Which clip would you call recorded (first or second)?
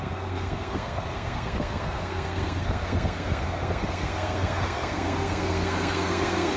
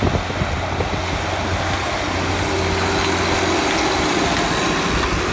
second